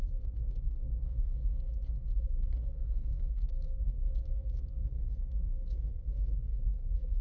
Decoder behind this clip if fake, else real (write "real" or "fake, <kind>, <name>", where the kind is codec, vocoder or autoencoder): fake, codec, SNAC